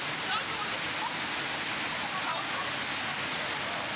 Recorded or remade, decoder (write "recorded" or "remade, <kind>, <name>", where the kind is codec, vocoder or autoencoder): recorded